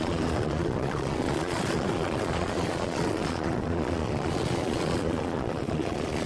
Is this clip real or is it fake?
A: fake